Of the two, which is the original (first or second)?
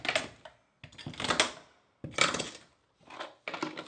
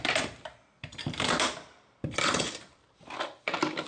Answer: first